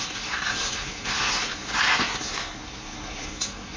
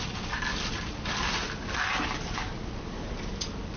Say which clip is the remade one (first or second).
first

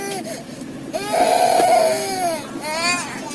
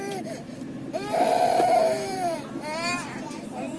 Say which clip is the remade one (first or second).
second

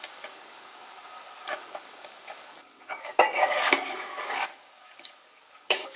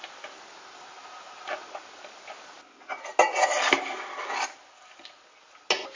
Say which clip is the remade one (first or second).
first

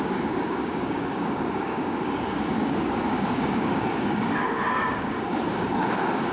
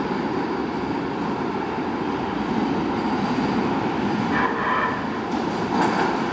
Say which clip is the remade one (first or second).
first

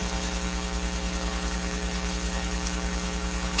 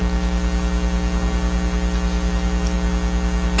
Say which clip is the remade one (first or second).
first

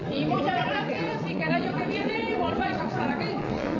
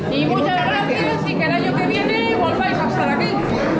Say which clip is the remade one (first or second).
first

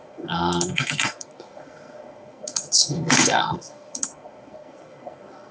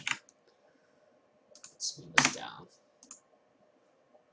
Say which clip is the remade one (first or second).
first